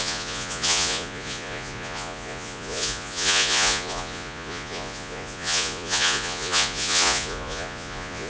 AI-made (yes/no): yes